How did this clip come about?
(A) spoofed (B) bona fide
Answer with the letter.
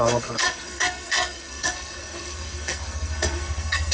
A